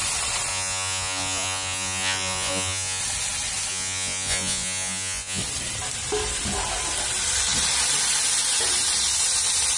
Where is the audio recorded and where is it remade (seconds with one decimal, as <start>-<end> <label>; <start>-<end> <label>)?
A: 0.0-0.5 recorded; 0.5-3.0 remade; 3.0-3.7 recorded; 3.7-5.4 remade; 5.4-9.8 recorded